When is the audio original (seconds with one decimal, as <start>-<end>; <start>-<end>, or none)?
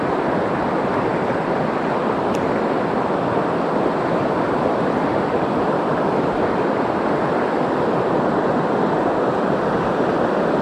0.0-10.6